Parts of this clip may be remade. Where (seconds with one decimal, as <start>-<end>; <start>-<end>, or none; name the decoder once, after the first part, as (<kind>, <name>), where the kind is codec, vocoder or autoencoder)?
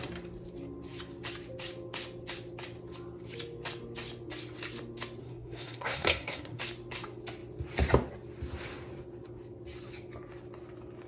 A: 5.2-6.6 (codec, SNAC)